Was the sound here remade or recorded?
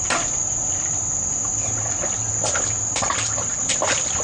recorded